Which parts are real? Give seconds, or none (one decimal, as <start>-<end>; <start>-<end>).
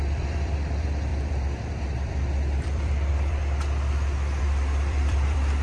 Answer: 3.4-4.4